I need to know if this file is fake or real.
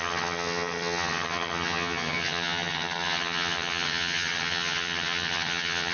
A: fake